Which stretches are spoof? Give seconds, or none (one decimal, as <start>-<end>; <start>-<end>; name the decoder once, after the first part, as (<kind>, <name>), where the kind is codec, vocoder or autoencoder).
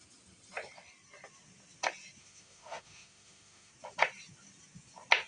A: 2.2-3.7 (autoencoder, DAC-VAE)